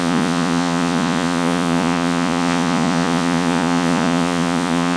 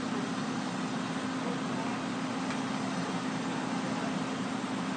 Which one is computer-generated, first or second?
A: first